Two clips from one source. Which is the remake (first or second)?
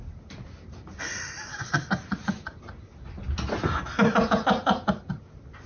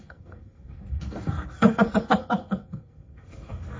second